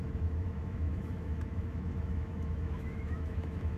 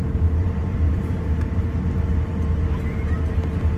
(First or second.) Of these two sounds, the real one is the second